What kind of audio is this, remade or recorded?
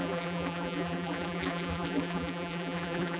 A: remade